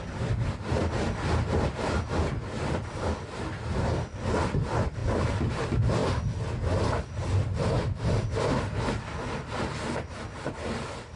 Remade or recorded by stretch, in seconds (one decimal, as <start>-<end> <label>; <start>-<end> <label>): 0.0-11.2 recorded